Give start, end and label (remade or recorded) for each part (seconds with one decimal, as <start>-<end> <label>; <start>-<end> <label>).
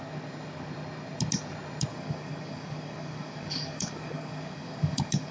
0.0-1.9 recorded; 1.9-5.3 remade